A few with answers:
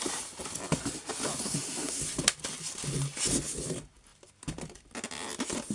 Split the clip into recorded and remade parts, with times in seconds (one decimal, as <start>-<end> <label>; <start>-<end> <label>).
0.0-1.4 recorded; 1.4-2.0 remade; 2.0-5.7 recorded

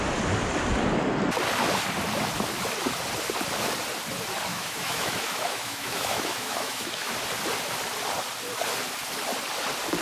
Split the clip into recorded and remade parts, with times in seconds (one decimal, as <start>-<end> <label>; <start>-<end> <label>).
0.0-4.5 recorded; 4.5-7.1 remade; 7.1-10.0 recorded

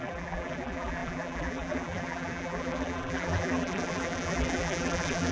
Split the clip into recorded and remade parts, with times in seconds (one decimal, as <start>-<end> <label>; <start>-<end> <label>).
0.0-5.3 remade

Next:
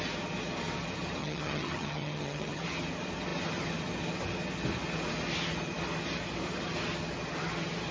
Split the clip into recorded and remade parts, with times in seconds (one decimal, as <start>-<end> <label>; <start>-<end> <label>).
0.0-1.2 recorded; 1.2-2.6 remade; 2.6-7.9 recorded

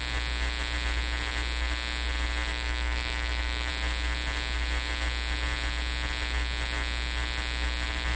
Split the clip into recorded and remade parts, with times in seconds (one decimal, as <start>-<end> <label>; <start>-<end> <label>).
0.0-2.5 recorded; 2.5-3.7 remade; 3.7-8.2 recorded

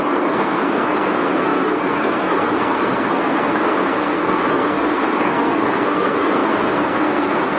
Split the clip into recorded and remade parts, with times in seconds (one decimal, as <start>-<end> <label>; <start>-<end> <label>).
0.0-7.6 remade